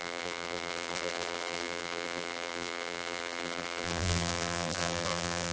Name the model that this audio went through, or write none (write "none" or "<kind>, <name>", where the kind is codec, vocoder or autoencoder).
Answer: vocoder, BigVGAN v2